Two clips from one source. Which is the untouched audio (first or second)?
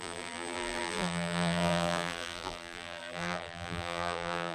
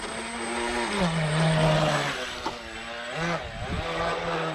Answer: second